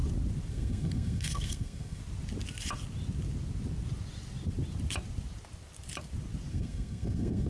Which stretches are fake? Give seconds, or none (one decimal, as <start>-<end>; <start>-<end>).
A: 0.5-2.0; 6.5-7.5